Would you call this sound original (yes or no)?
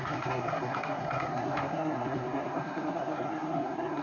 no